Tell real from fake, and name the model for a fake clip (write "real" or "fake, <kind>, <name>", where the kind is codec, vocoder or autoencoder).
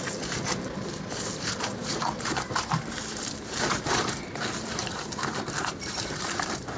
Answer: fake, vocoder, BigVGAN v2